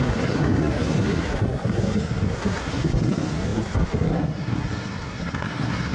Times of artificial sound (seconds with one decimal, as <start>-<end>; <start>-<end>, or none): 0.0-5.9